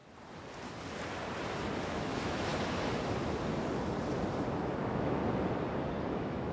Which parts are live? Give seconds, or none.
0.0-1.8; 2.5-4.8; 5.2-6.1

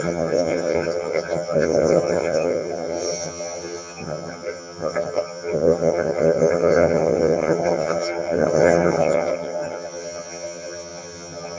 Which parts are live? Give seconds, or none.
none

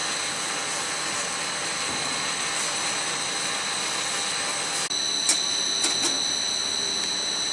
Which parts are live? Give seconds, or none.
0.0-7.5

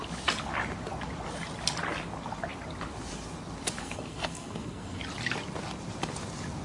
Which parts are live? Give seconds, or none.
0.0-3.8; 5.0-6.6

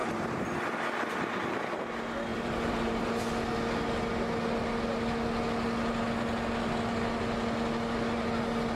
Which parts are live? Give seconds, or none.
0.6-2.3; 3.2-8.7

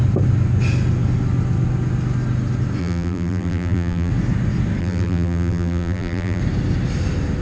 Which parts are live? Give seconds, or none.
0.0-2.8; 4.1-4.8; 6.4-7.4